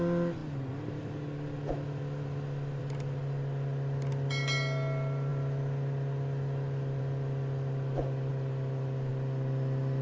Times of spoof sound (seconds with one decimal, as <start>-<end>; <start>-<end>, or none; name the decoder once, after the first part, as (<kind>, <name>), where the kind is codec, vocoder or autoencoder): none